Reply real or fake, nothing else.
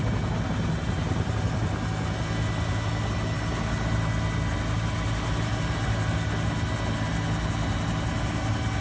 real